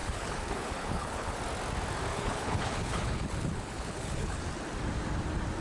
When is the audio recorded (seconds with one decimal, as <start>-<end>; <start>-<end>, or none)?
1.4-2.1; 4.4-5.6